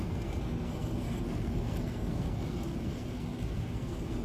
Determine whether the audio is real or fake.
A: fake